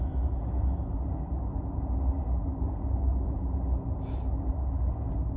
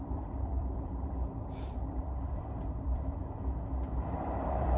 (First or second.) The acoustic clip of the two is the first